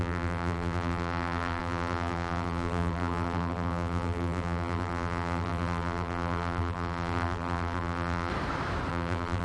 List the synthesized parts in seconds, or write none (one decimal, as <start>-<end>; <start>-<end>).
0.0-8.3; 8.9-9.4